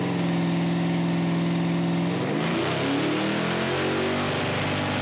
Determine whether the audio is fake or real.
real